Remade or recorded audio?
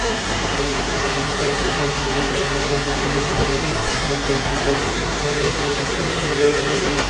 remade